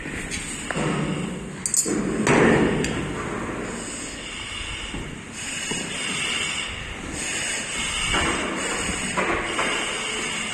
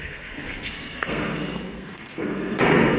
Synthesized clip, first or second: second